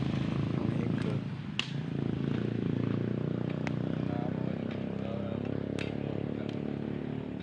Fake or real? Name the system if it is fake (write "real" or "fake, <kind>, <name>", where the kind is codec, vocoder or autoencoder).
real